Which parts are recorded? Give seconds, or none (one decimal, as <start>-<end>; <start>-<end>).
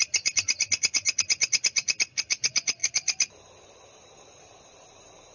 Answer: 0.0-5.3